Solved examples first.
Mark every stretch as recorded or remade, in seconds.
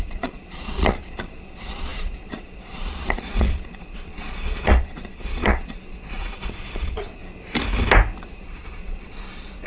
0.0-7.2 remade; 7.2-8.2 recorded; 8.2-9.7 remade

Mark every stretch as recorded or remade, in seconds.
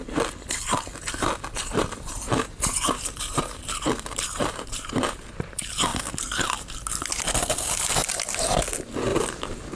0.0-1.6 recorded; 1.6-5.2 remade; 5.2-9.1 recorded; 9.1-9.8 remade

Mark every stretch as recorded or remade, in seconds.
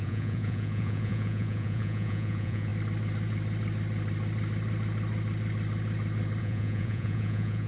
0.0-2.7 remade; 2.7-6.4 recorded; 6.4-7.7 remade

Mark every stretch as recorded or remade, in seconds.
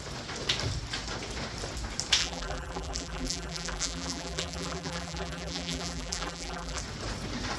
0.0-2.2 recorded; 2.2-6.8 remade; 6.8-7.6 recorded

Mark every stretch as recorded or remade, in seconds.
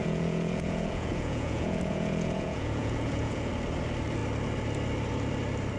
0.0-3.5 remade; 3.5-5.8 recorded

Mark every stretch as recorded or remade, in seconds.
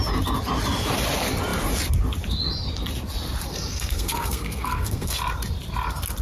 0.0-3.5 recorded; 3.5-5.2 remade; 5.2-6.2 recorded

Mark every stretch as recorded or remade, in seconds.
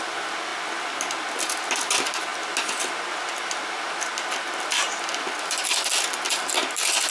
0.0-7.1 recorded